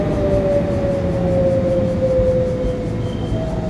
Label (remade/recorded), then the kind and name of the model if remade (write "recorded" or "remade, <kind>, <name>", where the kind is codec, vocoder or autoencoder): recorded